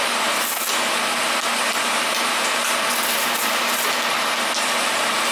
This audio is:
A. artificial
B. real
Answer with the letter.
B